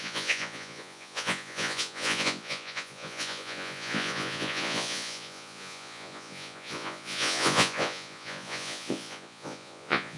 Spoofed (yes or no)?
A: yes